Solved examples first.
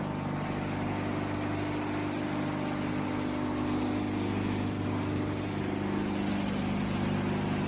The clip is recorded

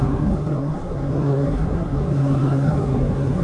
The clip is remade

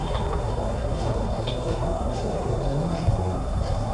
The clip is remade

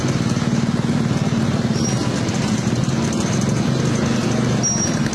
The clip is recorded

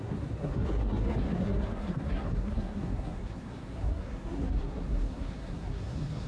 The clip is remade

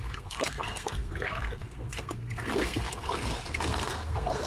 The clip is remade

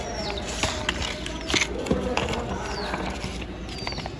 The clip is recorded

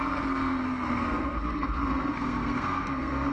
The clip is remade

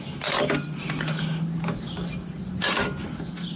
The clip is recorded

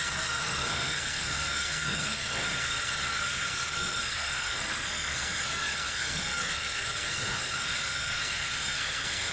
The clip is remade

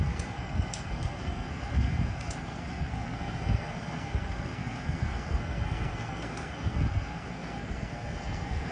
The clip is remade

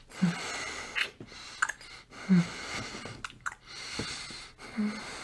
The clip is recorded